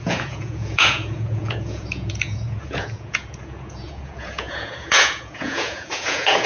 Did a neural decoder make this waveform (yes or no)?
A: yes